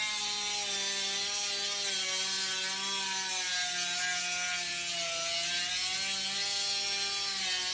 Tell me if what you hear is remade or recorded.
recorded